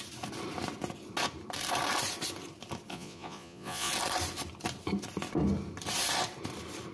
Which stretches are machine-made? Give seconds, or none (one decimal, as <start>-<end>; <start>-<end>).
2.9-3.9